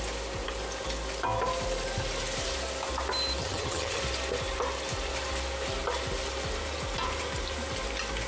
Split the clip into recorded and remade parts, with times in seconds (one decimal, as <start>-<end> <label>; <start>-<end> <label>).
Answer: 0.0-3.4 recorded; 3.4-4.0 remade; 4.0-8.3 recorded